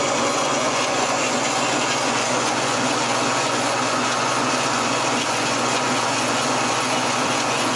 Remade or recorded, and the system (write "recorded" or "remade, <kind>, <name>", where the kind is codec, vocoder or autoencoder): remade, vocoder, Vocos